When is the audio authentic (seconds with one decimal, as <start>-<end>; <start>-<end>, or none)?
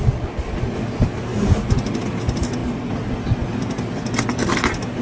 0.0-5.0